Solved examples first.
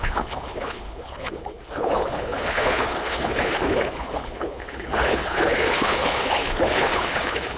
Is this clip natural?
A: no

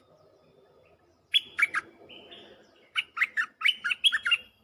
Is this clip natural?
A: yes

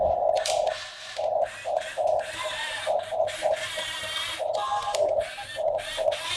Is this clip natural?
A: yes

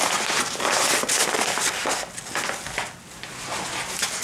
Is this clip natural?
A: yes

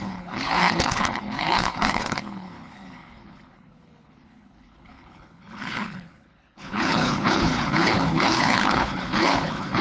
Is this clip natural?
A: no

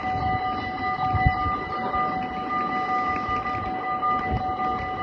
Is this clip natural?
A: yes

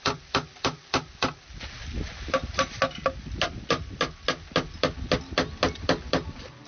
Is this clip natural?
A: yes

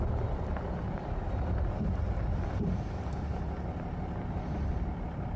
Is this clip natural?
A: yes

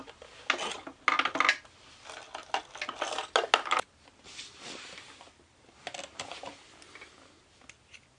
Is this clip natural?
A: yes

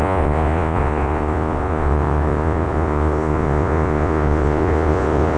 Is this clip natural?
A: no